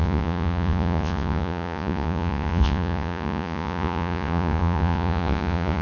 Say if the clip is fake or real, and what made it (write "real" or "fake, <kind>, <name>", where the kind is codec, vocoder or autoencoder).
fake, vocoder, Vocos